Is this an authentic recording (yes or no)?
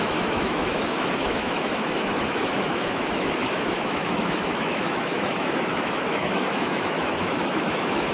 no